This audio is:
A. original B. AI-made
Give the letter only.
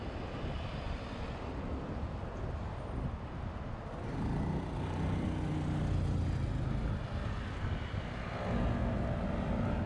A